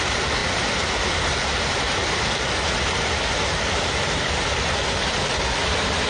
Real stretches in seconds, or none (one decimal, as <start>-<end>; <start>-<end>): 0.0-6.1